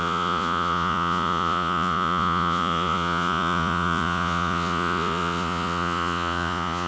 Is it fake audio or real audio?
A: fake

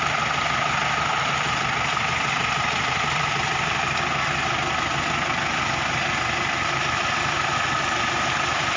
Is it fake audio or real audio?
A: real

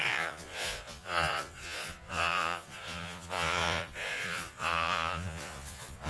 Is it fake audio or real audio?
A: fake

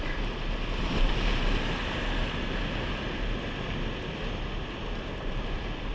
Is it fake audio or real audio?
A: real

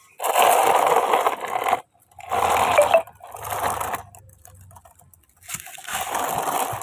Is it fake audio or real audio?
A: real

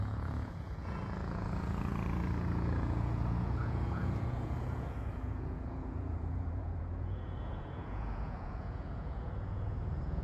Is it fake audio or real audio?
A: fake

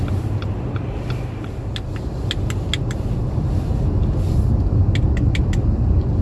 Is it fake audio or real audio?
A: real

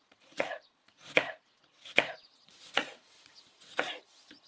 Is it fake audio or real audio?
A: fake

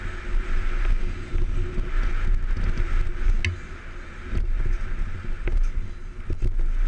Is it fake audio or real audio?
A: real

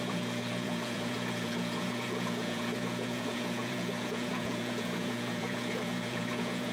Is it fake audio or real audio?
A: fake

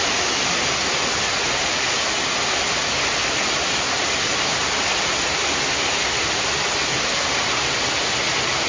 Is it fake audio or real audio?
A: real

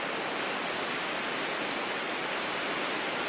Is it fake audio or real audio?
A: real